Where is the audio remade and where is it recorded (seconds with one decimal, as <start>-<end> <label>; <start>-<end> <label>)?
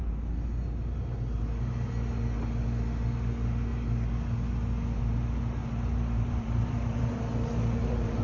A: 0.0-5.6 recorded; 5.6-8.2 remade